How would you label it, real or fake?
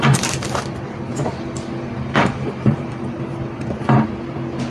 fake